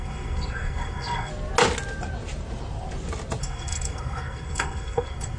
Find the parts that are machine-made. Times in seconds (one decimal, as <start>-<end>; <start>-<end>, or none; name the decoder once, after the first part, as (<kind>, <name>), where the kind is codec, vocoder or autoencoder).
0.0-1.3 (codec, SNAC); 3.4-5.4